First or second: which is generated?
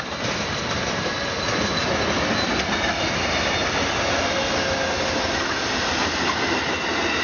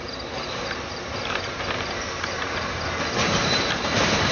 second